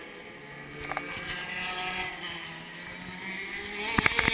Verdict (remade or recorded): recorded